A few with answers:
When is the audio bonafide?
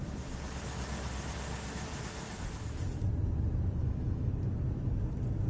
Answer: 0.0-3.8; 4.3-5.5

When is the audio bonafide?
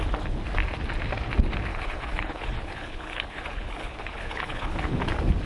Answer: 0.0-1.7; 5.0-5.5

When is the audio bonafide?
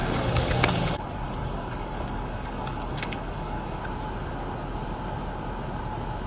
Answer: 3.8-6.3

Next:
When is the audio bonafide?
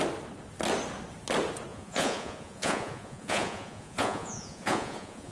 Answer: 0.0-1.7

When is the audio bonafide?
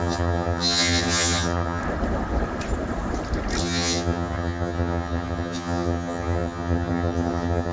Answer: 1.8-3.6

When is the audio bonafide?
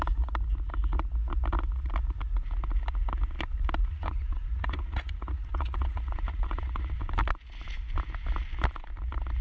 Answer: 0.0-3.8; 6.9-9.4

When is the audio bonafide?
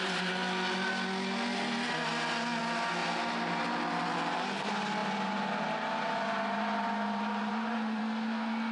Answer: 0.0-3.0; 3.6-5.0; 8.0-8.7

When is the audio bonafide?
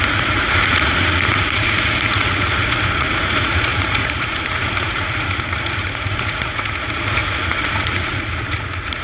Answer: none